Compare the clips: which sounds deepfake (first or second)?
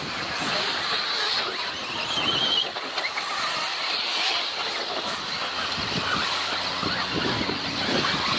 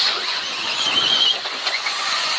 second